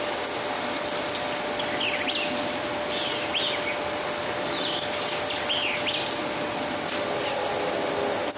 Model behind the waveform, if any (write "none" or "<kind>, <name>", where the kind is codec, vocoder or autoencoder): none